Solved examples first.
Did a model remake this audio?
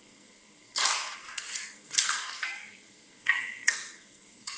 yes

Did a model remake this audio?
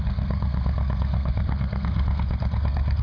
yes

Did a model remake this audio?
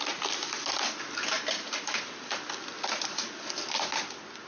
no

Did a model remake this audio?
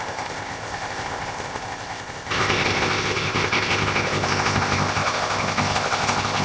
yes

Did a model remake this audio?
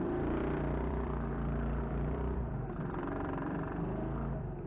yes